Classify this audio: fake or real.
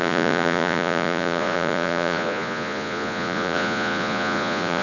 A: fake